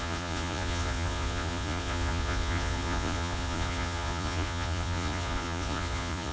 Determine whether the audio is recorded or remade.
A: remade